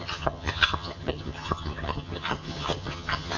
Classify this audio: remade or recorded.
remade